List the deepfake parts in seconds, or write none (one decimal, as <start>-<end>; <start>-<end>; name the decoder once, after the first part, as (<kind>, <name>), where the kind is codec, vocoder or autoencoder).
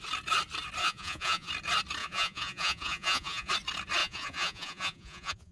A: 0.8-1.5 (vocoder, Vocos); 2.0-3.5; 4.0-5.5